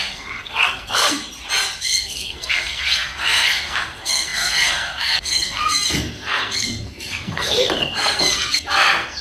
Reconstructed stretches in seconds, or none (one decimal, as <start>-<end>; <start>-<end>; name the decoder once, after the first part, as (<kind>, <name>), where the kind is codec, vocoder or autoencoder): 0.0-1.2 (codec, SNAC); 1.8-9.2